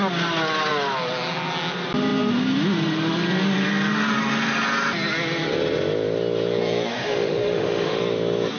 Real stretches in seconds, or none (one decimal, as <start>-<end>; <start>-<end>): 0.0-6.9; 8.0-8.6